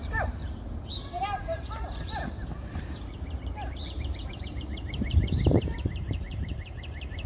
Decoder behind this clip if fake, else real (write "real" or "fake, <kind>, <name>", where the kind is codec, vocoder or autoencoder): fake, vocoder, BigVGAN v2